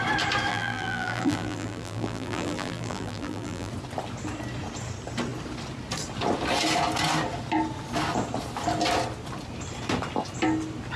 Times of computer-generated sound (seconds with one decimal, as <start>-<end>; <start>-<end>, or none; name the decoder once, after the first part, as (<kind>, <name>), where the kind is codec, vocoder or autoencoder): 0.5-3.7 (vocoder, BigVGAN v2)